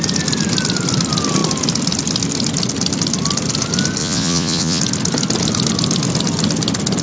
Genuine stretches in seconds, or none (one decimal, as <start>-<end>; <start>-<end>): 0.0-4.0; 4.8-7.0